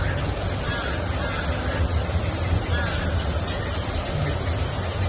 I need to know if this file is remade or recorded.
recorded